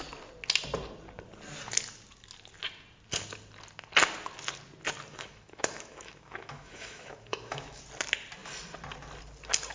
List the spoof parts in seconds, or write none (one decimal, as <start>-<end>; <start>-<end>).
5.1-7.8